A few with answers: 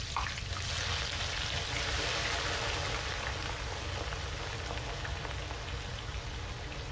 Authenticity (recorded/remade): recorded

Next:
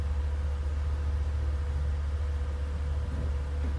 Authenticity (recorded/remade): recorded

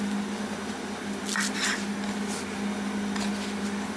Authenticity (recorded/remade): recorded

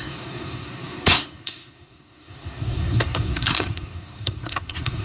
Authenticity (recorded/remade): remade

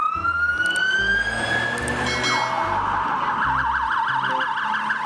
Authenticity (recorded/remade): recorded